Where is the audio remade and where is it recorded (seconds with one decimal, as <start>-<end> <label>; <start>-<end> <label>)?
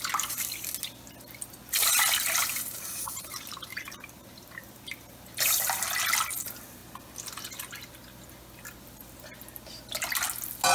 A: 0.0-2.4 recorded; 2.4-5.1 remade; 5.1-10.7 recorded